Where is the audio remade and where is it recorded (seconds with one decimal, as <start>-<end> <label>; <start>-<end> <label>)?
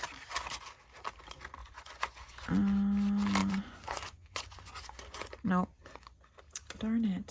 0.0-1.6 recorded; 1.6-2.6 remade; 2.6-3.4 recorded; 3.4-6.4 remade; 6.4-7.3 recorded